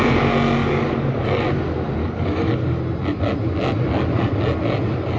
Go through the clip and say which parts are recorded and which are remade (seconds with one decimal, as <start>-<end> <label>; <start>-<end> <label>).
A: 0.0-0.6 recorded; 0.6-1.4 remade; 1.4-2.0 recorded; 2.0-2.8 remade; 2.8-5.2 recorded